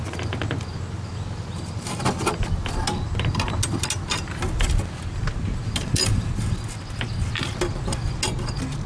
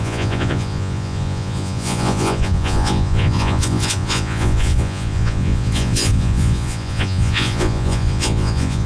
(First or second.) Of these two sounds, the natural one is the first